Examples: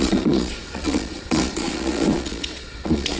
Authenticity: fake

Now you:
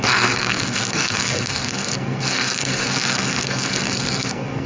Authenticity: fake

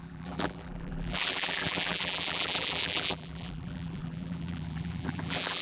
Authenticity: fake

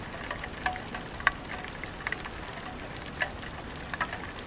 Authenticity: real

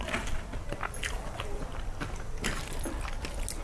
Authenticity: real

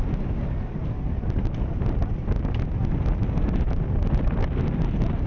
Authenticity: real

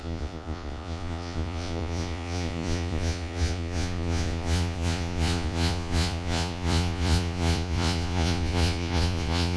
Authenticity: fake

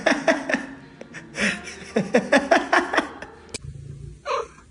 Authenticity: real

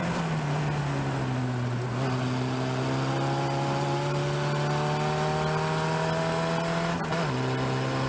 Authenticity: real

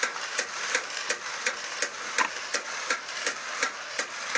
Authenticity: real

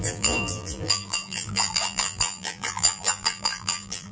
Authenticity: fake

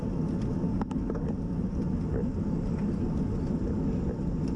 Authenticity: real